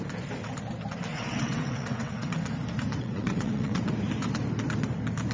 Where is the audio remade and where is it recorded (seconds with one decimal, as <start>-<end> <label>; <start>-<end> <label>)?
0.0-1.1 recorded; 1.1-2.4 remade; 2.4-3.0 recorded; 3.0-3.8 remade; 3.8-5.3 recorded